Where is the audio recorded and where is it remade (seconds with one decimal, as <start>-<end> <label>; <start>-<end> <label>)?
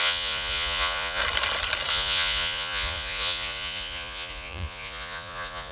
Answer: 0.0-1.2 remade; 1.2-1.9 recorded; 1.9-5.7 remade